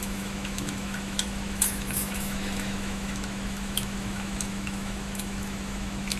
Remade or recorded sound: remade